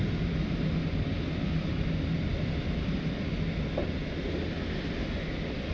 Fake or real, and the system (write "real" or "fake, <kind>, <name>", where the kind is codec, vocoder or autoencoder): real